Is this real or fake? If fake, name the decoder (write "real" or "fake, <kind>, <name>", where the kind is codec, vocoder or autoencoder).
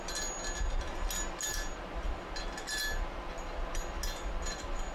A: real